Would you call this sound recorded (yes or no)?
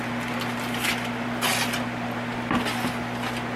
yes